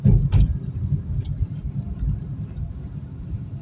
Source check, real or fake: real